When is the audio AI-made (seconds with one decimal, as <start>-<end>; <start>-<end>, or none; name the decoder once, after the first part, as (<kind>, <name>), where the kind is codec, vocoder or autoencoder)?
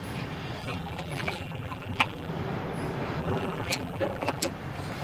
0.6-2.3 (vocoder, BigVGAN v2); 3.2-4.5